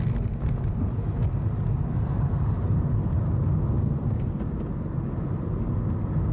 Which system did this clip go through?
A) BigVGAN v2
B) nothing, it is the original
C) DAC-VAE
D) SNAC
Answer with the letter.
B